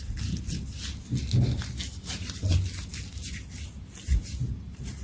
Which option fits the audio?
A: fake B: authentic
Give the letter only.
B